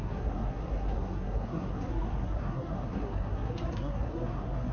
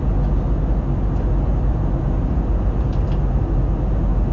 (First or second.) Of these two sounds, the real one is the second